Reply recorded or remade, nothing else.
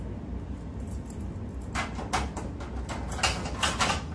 recorded